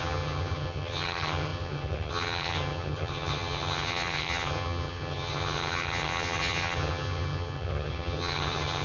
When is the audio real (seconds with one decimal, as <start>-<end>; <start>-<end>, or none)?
none